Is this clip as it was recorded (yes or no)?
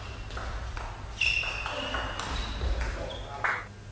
yes